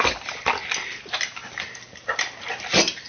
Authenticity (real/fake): real